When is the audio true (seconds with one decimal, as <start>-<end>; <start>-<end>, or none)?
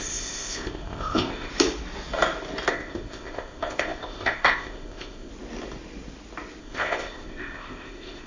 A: 1.5-2.7; 5.3-6.6